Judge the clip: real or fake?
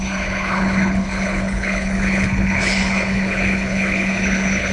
fake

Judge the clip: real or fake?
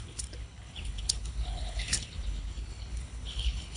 fake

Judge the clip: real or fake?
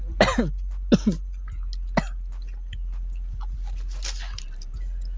real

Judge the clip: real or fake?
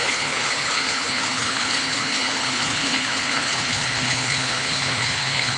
fake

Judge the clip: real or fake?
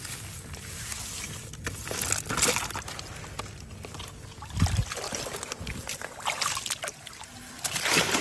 real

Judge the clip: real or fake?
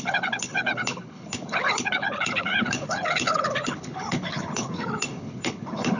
fake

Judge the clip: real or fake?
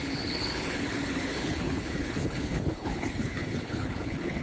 fake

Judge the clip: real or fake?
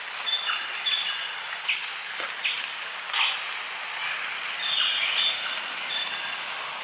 real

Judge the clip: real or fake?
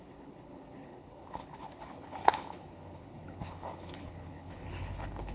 fake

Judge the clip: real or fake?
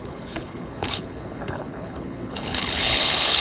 fake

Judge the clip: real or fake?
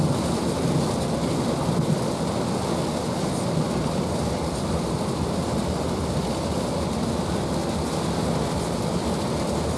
real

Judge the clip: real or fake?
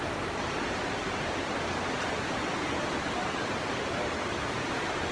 real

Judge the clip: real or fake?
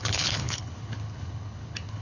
fake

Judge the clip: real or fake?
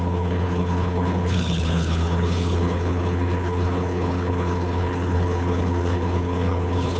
fake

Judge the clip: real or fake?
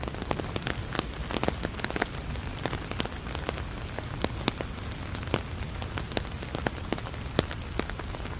real